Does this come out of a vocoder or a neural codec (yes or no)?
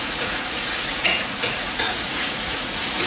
yes